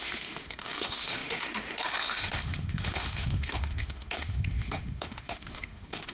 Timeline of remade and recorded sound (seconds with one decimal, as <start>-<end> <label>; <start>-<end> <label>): 0.0-6.1 remade